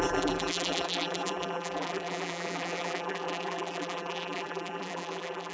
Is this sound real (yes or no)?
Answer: no